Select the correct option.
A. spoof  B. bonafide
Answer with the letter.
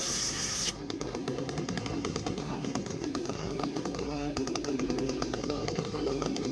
A